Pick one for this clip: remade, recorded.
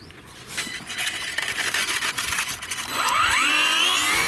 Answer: remade